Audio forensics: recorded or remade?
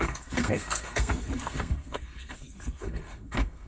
remade